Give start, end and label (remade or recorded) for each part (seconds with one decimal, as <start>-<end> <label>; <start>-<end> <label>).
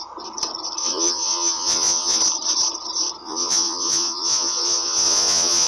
0.0-0.8 recorded; 0.8-2.2 remade; 2.2-3.2 recorded; 3.2-5.7 remade